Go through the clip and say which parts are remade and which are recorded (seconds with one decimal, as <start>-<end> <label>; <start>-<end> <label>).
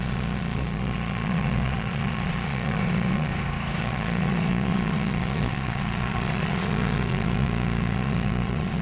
0.0-3.3 remade; 3.3-3.8 recorded; 3.8-8.8 remade